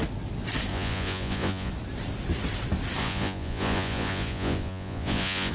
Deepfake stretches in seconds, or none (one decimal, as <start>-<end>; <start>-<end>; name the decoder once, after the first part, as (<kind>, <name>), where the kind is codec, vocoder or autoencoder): 0.7-1.7 (vocoder, Vocos); 3.0-5.5